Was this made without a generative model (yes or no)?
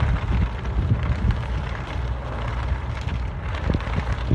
yes